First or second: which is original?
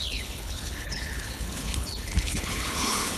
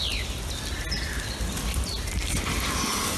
second